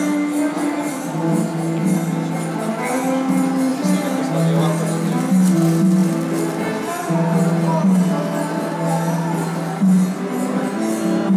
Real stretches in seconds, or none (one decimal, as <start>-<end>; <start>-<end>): 0.0-11.4